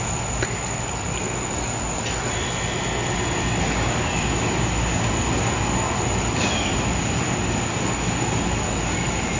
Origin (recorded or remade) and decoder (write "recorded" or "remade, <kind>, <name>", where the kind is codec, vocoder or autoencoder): recorded